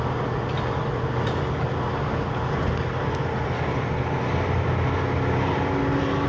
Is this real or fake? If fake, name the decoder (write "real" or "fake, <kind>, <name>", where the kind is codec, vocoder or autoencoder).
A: real